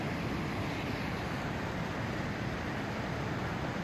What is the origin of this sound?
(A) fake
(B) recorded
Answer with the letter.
B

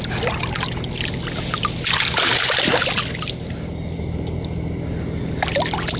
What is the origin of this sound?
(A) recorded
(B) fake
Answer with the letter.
A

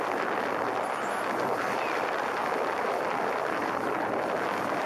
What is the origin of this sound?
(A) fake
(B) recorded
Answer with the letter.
B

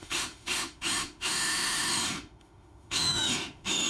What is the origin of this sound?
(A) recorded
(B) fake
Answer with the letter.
B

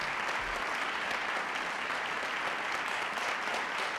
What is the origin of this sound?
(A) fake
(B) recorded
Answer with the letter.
B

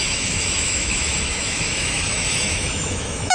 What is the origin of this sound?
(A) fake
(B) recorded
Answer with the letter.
A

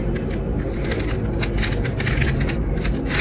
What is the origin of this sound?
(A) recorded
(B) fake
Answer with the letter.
A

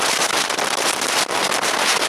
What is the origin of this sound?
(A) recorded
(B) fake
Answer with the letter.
B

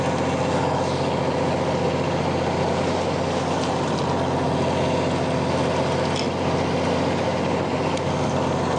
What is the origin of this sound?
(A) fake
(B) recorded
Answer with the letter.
B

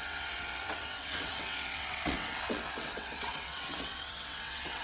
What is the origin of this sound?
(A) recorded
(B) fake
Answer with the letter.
B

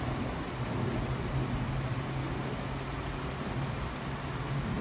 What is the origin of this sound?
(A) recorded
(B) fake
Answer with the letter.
A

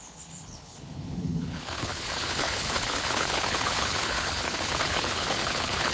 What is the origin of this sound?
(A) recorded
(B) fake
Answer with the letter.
B